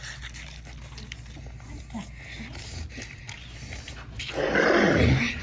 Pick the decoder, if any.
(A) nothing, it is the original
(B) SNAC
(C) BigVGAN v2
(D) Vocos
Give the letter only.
A